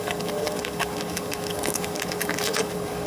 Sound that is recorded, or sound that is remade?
remade